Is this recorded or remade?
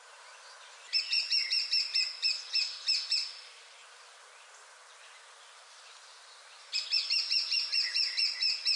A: recorded